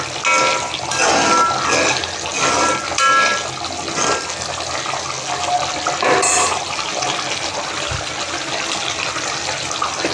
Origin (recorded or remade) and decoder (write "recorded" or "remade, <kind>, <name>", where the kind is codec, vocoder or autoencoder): recorded